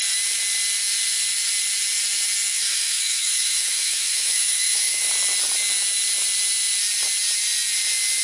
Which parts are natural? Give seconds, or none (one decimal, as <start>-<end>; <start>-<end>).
0.0-2.5; 5.1-8.2